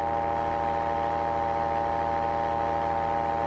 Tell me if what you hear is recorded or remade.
recorded